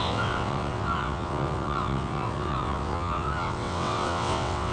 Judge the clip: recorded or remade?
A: remade